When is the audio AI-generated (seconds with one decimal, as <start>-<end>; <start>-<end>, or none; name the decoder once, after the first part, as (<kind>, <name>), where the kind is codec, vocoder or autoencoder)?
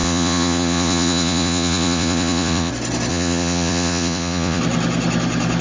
0.0-2.7 (vocoder, Vocos); 3.1-4.6